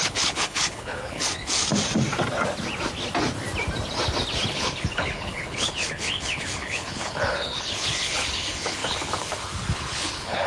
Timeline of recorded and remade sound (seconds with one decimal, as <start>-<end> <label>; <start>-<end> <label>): 0.0-1.7 remade; 1.7-4.5 recorded; 4.5-10.5 remade